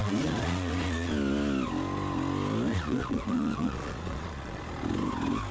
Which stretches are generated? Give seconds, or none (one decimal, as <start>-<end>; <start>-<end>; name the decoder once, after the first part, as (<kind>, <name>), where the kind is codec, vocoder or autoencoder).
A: 0.0-1.1 (vocoder, Vocos); 2.7-4.6